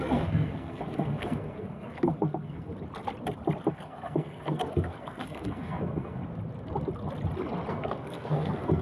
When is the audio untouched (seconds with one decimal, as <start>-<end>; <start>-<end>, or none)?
2.7-3.7; 6.2-7.7